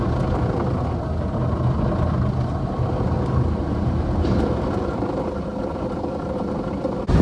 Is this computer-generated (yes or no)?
no